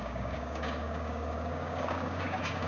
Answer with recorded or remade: remade